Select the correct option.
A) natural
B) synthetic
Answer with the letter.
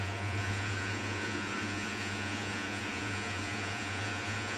B